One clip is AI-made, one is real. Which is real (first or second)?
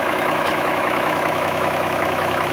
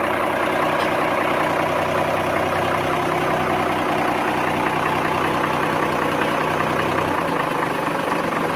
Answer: second